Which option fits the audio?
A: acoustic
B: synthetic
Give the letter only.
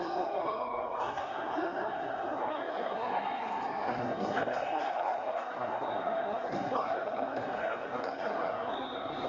B